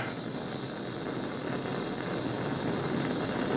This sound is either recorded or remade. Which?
recorded